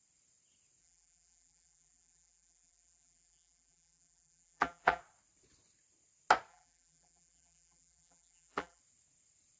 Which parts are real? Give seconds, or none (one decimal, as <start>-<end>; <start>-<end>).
0.0-0.8; 5.0-6.5; 8.8-9.6